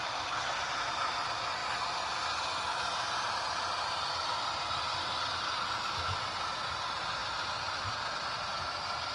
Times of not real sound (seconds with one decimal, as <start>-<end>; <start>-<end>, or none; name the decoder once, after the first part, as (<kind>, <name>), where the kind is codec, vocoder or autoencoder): none